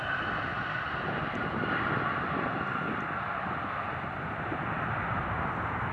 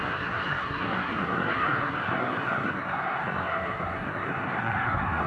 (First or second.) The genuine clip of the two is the first